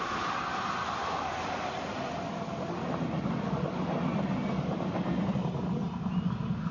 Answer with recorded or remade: recorded